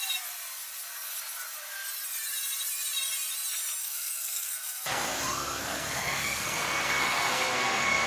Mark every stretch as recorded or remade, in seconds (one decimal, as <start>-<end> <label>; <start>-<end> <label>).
0.0-3.8 recorded; 3.8-8.1 remade